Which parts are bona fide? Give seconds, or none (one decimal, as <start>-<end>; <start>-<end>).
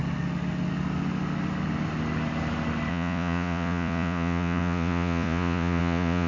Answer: 0.0-2.9